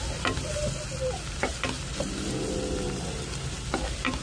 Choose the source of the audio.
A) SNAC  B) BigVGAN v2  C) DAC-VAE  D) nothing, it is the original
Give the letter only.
D